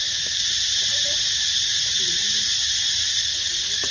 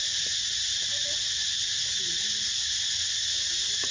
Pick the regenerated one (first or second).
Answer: first